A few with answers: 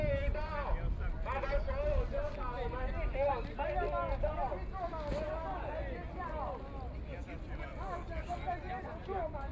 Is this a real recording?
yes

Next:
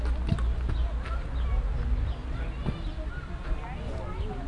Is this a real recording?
yes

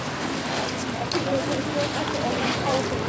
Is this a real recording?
yes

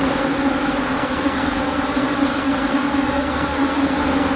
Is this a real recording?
no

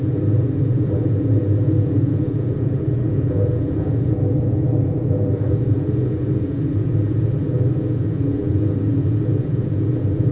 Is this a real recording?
no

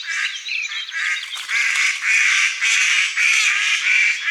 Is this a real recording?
no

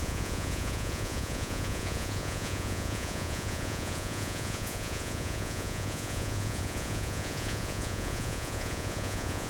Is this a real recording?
no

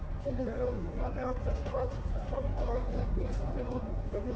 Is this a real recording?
no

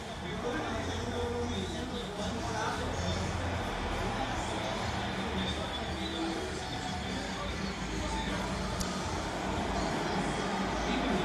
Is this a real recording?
yes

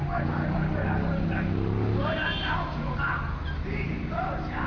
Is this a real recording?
yes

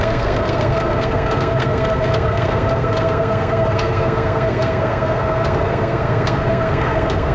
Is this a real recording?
no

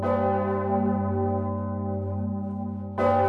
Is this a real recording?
yes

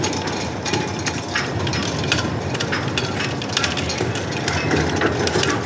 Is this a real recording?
yes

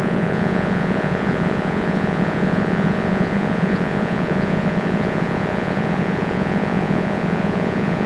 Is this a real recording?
no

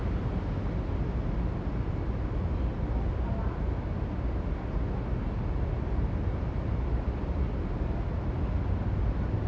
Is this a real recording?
yes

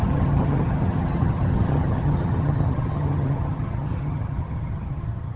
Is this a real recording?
no